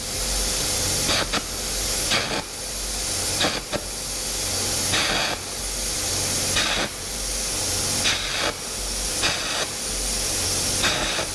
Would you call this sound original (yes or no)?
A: yes